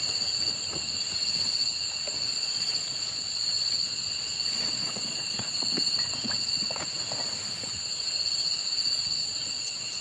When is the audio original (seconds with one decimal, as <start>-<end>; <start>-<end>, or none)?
0.0-2.3; 6.9-8.8